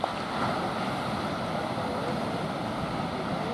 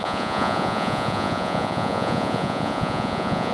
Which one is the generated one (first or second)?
second